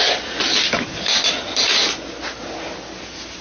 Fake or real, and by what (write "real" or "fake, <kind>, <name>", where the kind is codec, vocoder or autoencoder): real